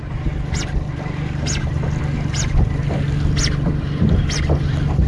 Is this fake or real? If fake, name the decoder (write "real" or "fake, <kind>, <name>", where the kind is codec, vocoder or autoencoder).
real